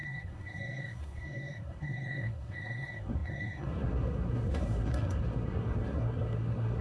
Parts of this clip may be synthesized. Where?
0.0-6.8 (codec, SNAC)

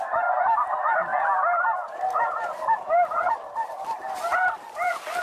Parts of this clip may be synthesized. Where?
none

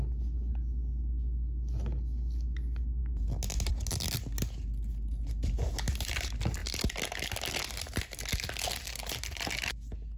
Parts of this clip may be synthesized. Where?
none